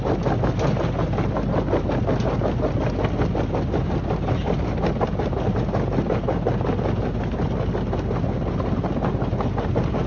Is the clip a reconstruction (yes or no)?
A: no